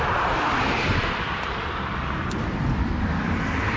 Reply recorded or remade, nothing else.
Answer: recorded